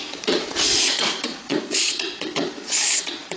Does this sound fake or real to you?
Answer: fake